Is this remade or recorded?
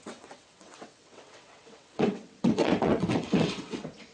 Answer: remade